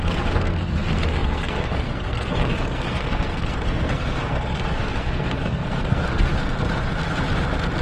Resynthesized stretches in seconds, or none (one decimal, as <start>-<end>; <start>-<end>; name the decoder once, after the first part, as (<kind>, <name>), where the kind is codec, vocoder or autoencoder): 0.0-6.3 (codec, SNAC)